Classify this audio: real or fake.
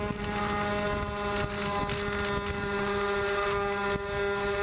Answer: real